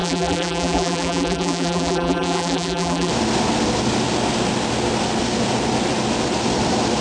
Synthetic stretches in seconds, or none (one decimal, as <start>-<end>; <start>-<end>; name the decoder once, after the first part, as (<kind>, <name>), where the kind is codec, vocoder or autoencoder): 0.0-3.1 (vocoder, BigVGAN v2)

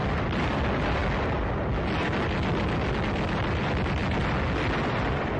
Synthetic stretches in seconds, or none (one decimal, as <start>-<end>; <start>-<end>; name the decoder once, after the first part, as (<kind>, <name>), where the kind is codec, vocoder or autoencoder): 0.0-1.0 (vocoder, BigVGAN v2); 3.1-4.0; 4.8-5.4